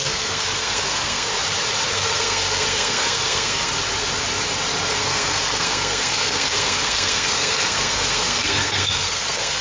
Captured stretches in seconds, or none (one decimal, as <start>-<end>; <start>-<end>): 1.3-1.9; 3.7-4.9